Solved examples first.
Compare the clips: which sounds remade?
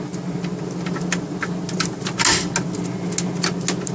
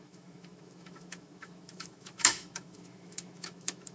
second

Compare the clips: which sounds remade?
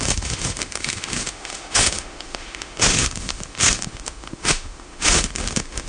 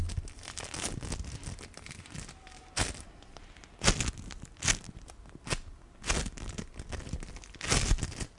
first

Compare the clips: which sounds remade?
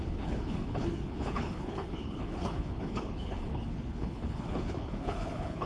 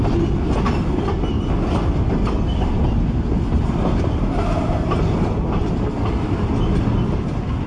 first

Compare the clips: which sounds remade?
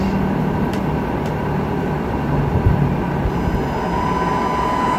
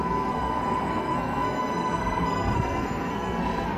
second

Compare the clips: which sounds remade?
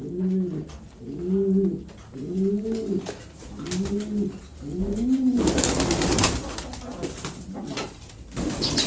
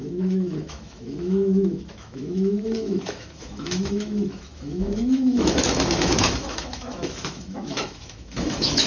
second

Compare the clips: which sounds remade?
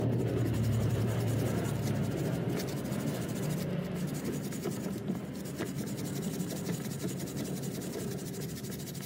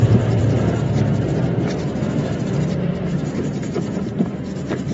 second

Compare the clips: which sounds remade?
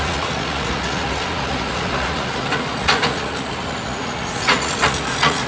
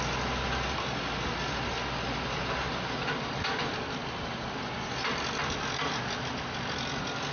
first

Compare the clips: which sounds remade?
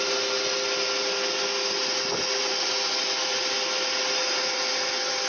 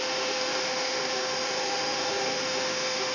second